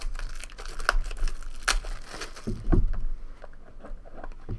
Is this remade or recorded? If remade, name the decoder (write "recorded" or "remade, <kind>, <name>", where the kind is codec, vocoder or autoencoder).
recorded